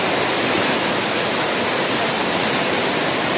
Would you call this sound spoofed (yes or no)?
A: no